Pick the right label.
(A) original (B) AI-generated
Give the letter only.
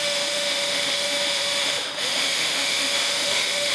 B